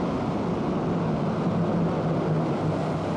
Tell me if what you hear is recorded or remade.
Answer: recorded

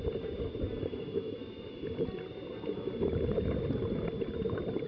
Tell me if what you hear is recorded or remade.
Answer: recorded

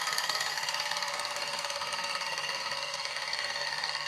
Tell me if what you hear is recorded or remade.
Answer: remade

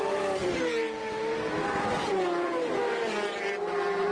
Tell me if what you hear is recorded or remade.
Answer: remade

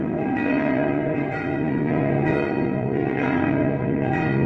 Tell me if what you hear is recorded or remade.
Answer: remade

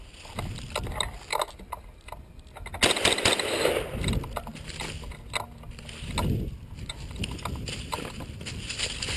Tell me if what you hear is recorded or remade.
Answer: recorded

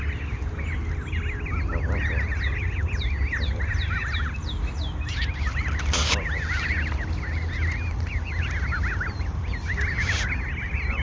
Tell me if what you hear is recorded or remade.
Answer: recorded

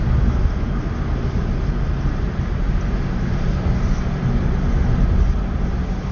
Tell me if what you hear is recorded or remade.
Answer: recorded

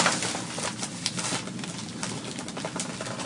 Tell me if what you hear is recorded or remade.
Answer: recorded